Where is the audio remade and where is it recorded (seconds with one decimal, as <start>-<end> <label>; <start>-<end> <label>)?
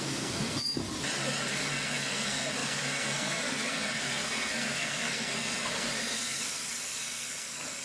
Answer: 0.0-0.8 remade; 0.8-1.5 recorded; 1.5-7.8 remade